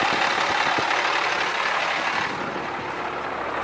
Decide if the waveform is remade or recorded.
recorded